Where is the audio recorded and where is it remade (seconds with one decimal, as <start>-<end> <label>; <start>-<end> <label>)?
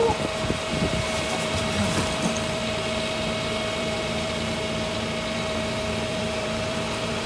0.0-0.7 recorded; 0.7-2.6 remade; 2.6-3.8 recorded; 3.8-7.3 remade